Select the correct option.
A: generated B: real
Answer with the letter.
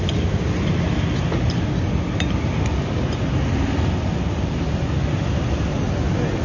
B